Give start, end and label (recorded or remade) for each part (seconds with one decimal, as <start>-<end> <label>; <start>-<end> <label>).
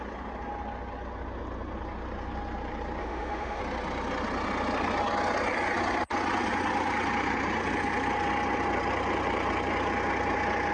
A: 0.0-3.0 recorded; 3.0-3.6 remade; 3.6-10.7 recorded